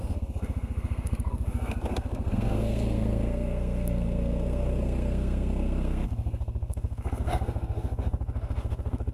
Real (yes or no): no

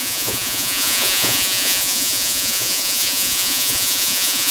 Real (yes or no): no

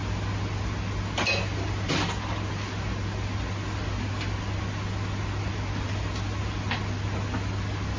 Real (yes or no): yes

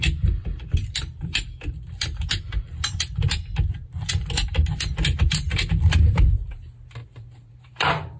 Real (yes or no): no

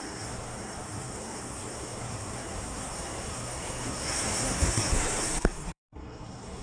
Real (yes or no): no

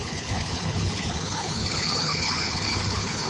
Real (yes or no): no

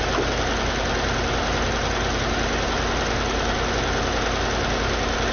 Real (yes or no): yes